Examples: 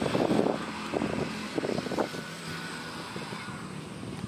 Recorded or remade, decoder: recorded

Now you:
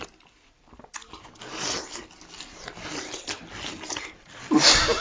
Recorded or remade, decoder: recorded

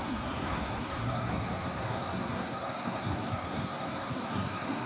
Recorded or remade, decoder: remade, codec, SNAC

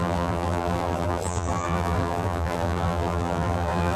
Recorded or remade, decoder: remade, vocoder, BigVGAN v2